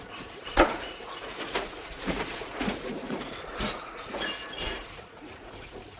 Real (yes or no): no